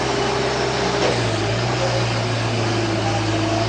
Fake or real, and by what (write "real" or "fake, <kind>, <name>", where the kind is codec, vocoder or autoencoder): real